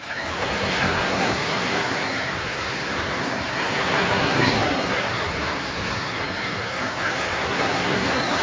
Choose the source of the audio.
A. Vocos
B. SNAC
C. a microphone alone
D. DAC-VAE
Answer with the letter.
B